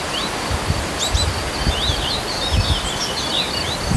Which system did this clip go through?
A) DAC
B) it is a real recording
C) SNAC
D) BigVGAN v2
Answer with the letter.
B